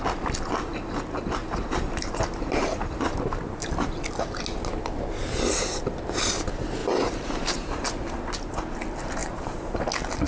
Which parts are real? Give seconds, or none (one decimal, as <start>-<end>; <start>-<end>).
0.0-1.4; 4.0-6.8; 7.8-9.2; 9.8-10.3